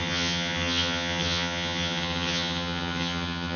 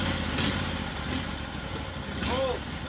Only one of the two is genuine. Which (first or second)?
second